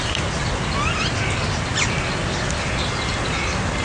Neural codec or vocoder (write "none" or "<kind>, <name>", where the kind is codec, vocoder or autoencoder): none